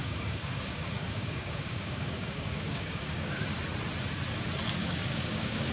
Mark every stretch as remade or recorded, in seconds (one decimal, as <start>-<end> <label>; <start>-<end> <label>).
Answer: 0.0-3.4 remade; 3.4-4.8 recorded; 4.8-5.7 remade